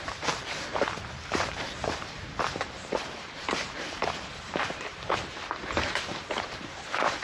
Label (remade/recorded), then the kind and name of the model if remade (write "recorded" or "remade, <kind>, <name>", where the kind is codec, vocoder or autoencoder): remade, vocoder, BigVGAN v2